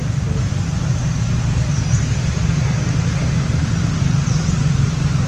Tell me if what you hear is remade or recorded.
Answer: recorded